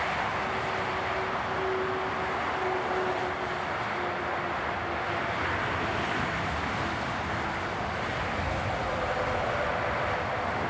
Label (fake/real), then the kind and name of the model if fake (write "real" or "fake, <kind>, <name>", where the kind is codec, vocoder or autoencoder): real